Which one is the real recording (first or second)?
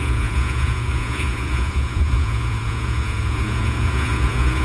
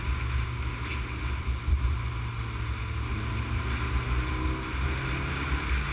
second